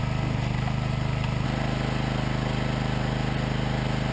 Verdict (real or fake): real